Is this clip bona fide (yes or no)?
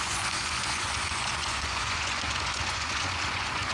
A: no